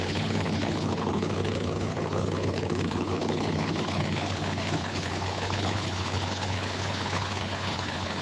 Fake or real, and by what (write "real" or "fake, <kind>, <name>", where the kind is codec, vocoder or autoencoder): fake, codec, HILCodec